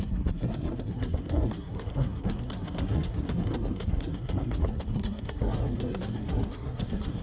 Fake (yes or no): yes